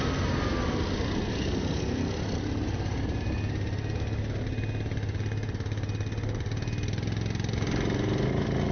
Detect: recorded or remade recorded